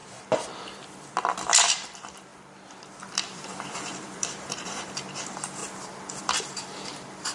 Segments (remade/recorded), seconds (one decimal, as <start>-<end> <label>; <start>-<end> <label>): 0.0-1.3 recorded; 1.3-2.3 remade; 2.3-3.1 recorded; 3.1-5.6 remade; 5.6-6.2 recorded; 6.2-7.3 remade